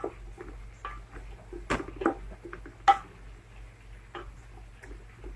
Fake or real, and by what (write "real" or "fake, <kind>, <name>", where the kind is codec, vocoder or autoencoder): real